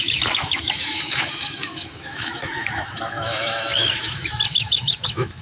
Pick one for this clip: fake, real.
fake